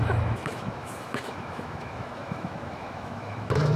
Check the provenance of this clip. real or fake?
fake